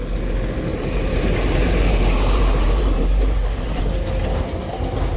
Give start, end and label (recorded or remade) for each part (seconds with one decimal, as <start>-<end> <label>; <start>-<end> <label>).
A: 0.0-0.7 recorded; 0.7-3.8 remade; 3.8-5.2 recorded